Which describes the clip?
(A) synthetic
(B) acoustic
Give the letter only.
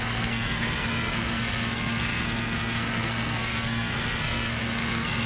A